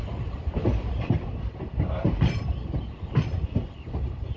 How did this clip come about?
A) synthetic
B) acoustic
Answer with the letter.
B